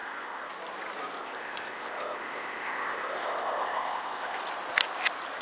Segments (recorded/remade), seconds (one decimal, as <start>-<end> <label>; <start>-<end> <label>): 0.0-0.5 remade; 0.5-1.2 recorded; 1.2-4.4 remade; 4.4-5.4 recorded